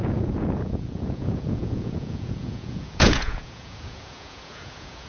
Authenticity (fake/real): fake